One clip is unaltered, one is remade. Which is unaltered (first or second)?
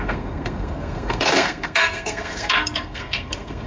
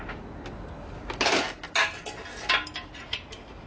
second